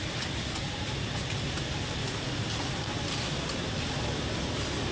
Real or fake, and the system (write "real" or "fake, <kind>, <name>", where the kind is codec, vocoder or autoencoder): real